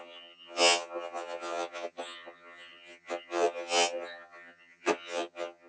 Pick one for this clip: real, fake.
fake